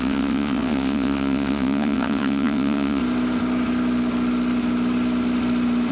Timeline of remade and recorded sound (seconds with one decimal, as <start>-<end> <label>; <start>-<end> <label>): 0.0-3.0 remade; 3.0-5.9 recorded